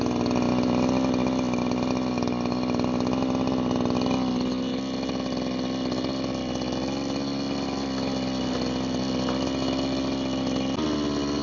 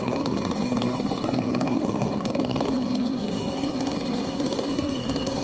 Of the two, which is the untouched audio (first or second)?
first